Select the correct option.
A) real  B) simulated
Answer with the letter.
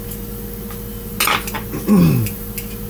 A